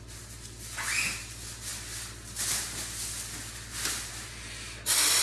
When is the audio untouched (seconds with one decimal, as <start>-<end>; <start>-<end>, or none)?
0.0-5.2